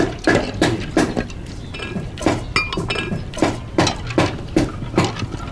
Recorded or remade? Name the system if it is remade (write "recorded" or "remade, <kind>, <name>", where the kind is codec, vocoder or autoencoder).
recorded